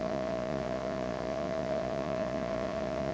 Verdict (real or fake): fake